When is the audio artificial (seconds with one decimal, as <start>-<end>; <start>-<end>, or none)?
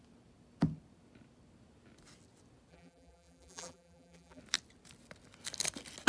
2.7-4.4